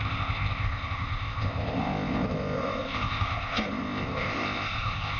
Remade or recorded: remade